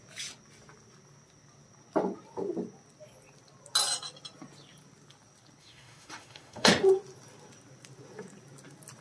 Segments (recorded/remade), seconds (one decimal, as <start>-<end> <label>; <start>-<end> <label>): 0.0-5.6 recorded; 5.6-6.7 remade; 6.7-9.0 recorded

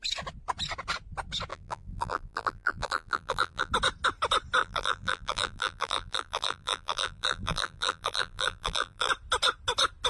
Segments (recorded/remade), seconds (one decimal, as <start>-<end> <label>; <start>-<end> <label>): 0.0-1.5 recorded; 1.5-3.7 remade; 3.7-4.6 recorded; 4.6-9.1 remade; 9.1-10.1 recorded

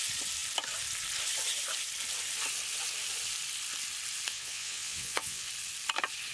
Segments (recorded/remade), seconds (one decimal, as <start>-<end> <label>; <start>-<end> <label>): 0.0-4.3 recorded; 4.3-5.5 remade; 5.5-6.3 recorded

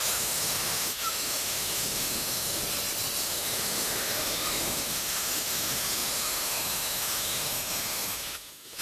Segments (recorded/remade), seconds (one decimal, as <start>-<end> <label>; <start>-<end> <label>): 0.0-2.6 remade; 2.6-3.2 recorded; 3.2-8.8 remade

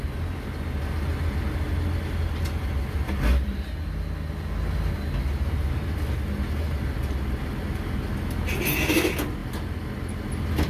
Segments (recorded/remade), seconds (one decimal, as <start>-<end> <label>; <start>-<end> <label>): 0.0-10.7 recorded

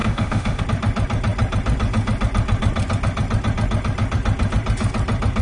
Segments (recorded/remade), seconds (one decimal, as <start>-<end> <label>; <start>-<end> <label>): 0.0-0.6 remade; 0.6-5.4 recorded

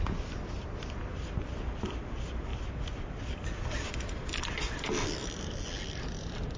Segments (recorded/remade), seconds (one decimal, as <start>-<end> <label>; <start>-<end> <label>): 0.0-6.6 recorded